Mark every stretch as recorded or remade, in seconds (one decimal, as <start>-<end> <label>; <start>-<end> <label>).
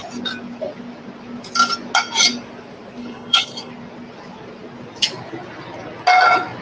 0.0-3.0 recorded; 3.0-3.7 remade; 3.7-6.6 recorded